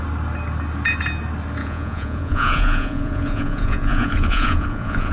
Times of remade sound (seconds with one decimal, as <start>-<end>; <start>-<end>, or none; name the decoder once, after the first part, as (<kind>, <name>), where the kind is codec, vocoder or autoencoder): 1.6-5.1 (vocoder, Vocos)